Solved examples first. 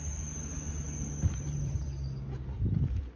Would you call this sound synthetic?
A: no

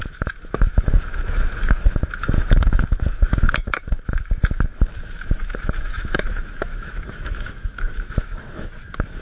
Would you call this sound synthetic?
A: yes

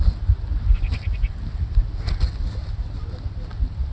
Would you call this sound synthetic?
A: no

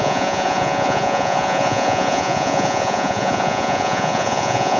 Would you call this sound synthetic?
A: yes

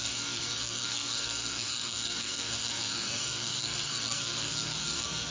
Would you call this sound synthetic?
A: yes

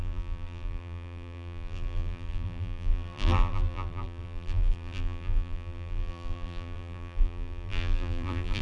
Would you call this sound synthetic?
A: yes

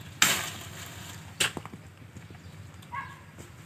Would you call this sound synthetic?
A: no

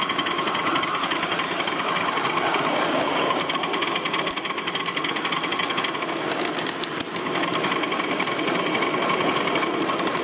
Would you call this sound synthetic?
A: no